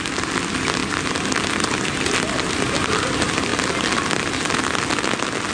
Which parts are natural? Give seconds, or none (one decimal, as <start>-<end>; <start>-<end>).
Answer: 0.0-5.5